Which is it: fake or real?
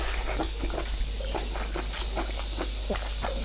real